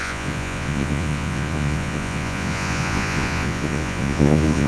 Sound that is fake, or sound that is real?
fake